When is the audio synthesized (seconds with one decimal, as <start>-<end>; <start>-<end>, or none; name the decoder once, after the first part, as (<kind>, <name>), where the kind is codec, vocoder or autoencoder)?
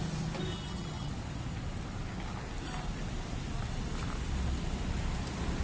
0.5-1.1 (vocoder, HiFi-GAN)